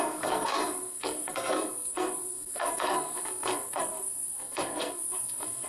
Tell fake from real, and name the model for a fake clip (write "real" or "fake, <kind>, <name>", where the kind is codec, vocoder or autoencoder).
fake, codec, SNAC